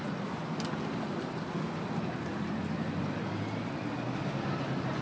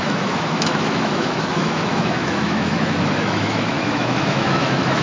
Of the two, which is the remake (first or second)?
second